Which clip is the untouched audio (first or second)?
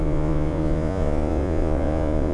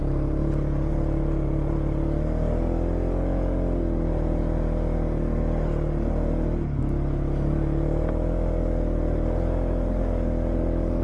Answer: second